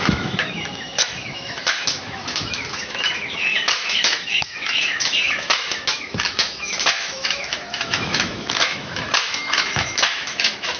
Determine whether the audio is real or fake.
fake